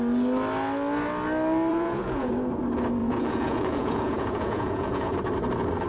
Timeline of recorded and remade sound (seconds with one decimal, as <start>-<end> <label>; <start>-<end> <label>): 0.0-1.7 recorded; 1.7-2.3 remade; 2.3-3.0 recorded; 3.0-5.2 remade; 5.2-5.9 recorded